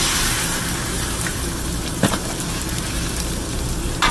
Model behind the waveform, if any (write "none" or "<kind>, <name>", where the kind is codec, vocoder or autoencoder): vocoder, BigVGAN v2